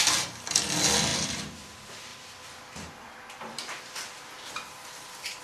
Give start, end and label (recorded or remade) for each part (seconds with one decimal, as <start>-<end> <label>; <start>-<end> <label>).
0.0-1.1 recorded; 1.1-1.7 remade; 1.7-2.1 recorded; 2.1-5.4 remade